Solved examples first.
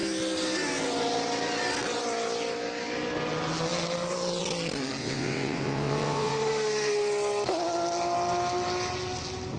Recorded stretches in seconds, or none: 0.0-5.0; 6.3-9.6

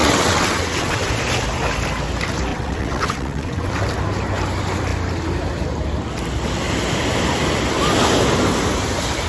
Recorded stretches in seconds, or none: 1.1-2.5; 3.7-9.3

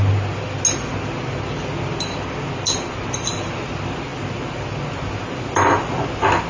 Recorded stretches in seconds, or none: 0.0-6.5

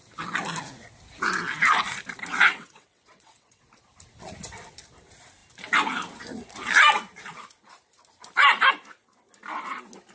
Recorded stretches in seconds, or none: 0.0-2.5; 3.6-10.1

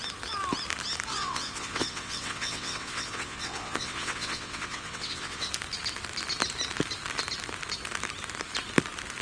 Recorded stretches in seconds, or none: 0.0-1.1; 5.5-9.2

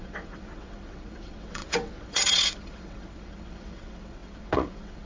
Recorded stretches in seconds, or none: none

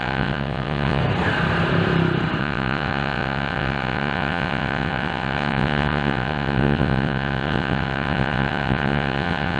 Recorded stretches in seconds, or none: 1.0-2.4

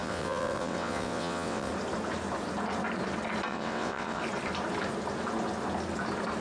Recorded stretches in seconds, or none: 1.7-3.5; 4.2-6.4